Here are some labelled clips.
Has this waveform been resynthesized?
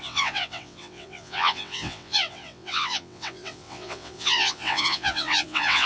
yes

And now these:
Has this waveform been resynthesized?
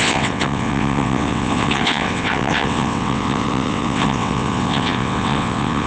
yes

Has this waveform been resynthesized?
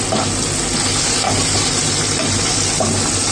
no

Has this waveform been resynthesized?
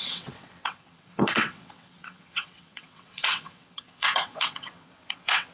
yes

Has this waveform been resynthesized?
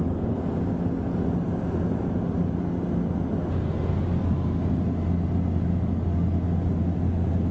no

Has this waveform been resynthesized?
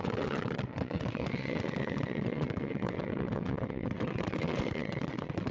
yes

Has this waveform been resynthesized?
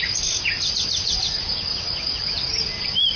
no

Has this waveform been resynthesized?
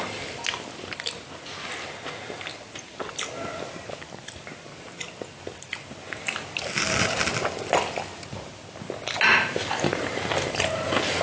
no